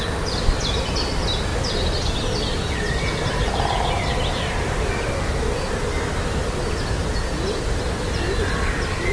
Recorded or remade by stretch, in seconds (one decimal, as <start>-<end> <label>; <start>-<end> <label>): 0.0-9.1 recorded